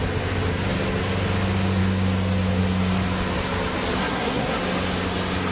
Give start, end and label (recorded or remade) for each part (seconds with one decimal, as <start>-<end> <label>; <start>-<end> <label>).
0.0-4.0 recorded; 4.0-4.6 remade; 4.6-5.5 recorded